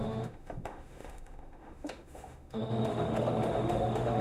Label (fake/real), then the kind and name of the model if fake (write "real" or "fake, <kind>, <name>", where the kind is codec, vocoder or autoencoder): fake, autoencoder, DAC-VAE